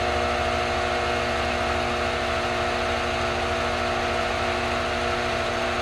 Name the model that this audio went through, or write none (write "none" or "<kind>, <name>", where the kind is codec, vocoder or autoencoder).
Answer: none